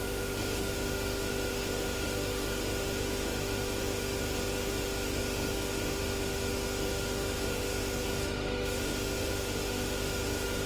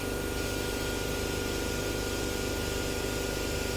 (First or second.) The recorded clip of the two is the second